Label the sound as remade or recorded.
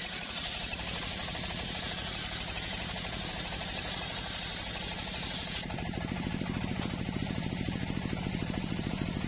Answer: remade